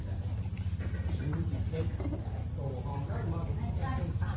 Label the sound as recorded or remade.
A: remade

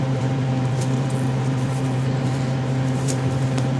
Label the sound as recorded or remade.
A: remade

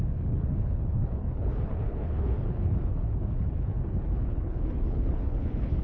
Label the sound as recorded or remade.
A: remade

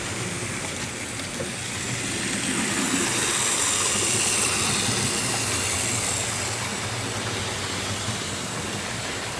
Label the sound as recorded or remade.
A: recorded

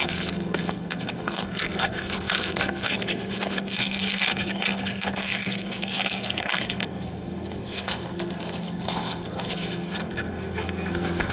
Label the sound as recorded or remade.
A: remade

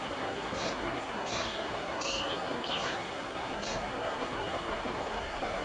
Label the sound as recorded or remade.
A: remade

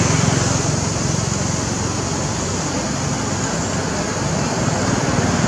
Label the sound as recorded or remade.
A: recorded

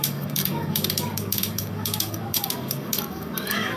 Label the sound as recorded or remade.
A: remade